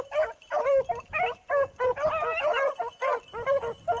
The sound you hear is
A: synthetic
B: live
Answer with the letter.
B